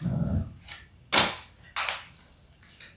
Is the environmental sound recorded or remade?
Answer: recorded